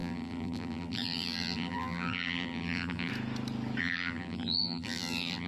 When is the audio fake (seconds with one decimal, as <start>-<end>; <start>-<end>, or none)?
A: 0.0-3.1; 3.8-5.5